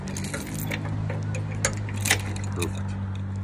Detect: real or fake real